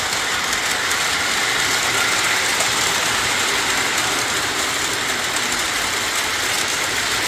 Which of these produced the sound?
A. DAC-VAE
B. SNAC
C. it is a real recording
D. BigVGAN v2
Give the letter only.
C